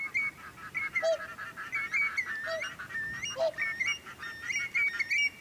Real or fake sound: real